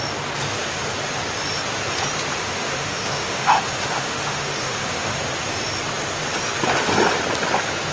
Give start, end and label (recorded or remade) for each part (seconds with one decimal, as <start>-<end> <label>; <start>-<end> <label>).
0.0-2.4 recorded; 2.4-5.2 remade; 5.2-7.9 recorded